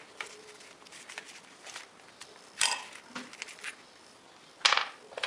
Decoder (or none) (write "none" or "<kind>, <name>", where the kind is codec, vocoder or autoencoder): none